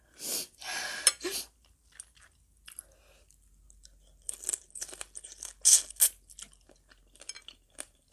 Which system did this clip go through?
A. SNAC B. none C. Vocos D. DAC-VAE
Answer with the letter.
B